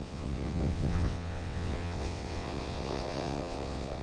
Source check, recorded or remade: remade